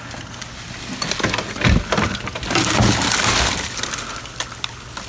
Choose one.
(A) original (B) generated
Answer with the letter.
A